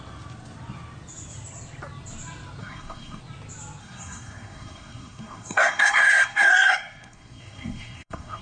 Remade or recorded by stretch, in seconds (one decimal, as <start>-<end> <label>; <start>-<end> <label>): 0.0-2.6 recorded; 2.6-3.2 remade; 3.2-3.8 recorded; 3.8-8.4 remade